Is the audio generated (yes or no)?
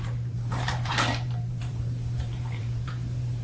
yes